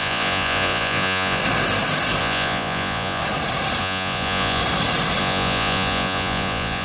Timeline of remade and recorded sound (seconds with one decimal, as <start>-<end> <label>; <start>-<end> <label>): 0.0-1.4 remade; 1.4-2.2 recorded; 2.2-3.2 remade; 3.2-3.8 recorded; 3.8-4.6 remade; 4.6-5.2 recorded; 5.2-6.8 remade